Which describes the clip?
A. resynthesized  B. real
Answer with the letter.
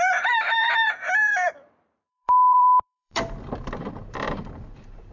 A